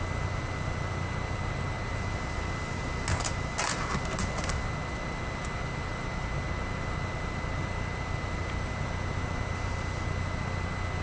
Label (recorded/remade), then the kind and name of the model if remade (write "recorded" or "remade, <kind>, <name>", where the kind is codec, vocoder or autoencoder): recorded